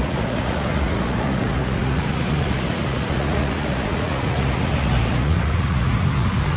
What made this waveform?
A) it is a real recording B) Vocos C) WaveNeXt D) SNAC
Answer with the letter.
B